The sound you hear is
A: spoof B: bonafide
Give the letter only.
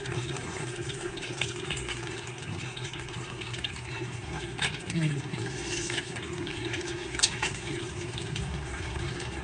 A